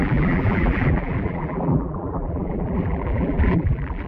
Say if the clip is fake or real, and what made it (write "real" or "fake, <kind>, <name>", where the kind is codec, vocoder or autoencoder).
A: fake, vocoder, BigVGAN v2